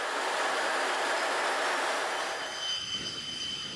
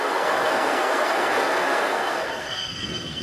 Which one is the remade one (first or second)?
second